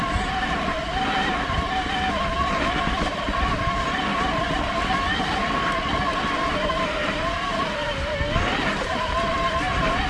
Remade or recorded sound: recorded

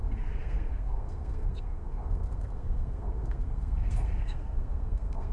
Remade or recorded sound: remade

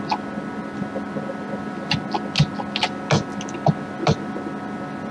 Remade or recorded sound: recorded